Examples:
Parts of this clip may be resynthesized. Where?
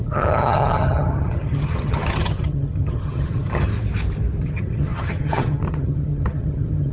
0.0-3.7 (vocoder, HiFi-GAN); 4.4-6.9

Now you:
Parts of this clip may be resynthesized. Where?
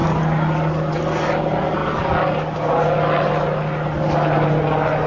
none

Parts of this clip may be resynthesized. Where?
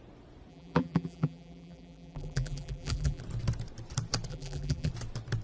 0.5-3.2 (vocoder, BigVGAN v2); 4.3-4.9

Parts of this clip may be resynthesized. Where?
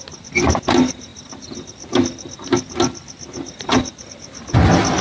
none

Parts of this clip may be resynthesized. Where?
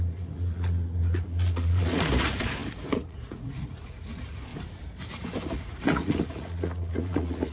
0.0-4.5 (vocoder, Vocos); 5.4-7.5